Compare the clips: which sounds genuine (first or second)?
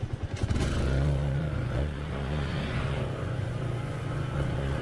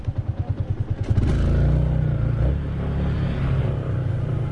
second